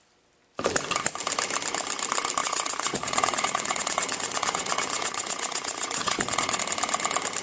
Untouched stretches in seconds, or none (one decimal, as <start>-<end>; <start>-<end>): 0.0-2.4; 6.6-7.4